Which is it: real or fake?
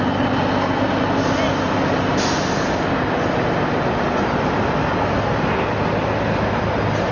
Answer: real